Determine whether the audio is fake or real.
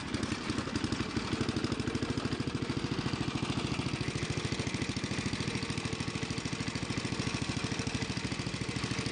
real